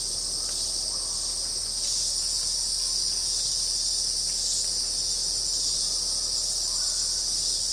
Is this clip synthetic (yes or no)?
no